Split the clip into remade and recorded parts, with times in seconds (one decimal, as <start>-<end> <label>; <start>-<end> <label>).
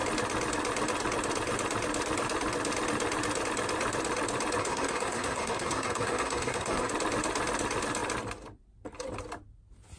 0.0-4.6 recorded; 4.6-6.9 remade; 6.9-10.0 recorded